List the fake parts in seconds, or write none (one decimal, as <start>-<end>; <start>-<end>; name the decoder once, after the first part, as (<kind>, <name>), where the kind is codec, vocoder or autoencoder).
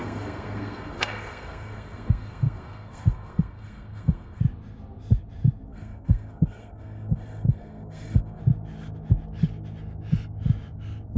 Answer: 0.0-4.4 (codec, SNAC); 5.7-8.4